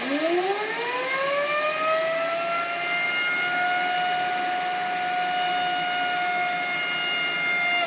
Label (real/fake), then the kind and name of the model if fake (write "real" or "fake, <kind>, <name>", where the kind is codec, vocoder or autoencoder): real